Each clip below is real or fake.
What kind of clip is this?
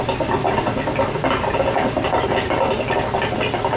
real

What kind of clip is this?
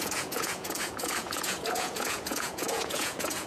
fake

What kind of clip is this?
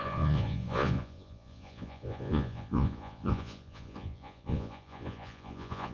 fake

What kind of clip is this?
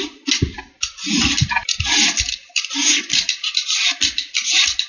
real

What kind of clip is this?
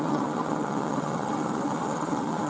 fake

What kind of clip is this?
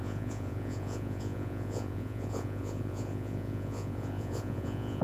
fake